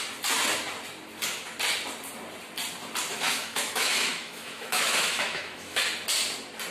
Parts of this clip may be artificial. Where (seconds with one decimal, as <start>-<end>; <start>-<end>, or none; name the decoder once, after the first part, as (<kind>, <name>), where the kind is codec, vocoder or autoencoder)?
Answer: 3.1-5.8 (autoencoder, DAC-VAE)